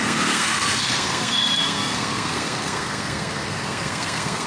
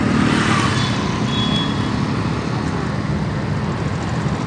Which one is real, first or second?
second